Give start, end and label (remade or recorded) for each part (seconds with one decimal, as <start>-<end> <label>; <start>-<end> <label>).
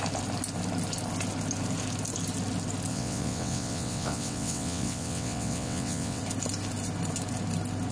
0.0-2.9 recorded; 2.9-6.2 remade; 6.2-7.9 recorded